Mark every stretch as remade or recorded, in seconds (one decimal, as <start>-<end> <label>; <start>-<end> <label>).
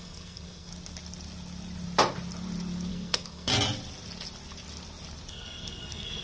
0.0-0.7 remade; 0.7-2.9 recorded; 2.9-3.5 remade; 3.5-5.3 recorded; 5.3-6.2 remade